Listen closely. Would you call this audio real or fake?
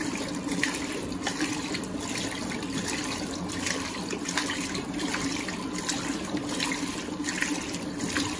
real